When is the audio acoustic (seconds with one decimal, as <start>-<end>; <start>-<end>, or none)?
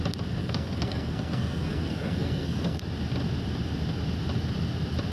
0.0-0.4; 2.8-5.1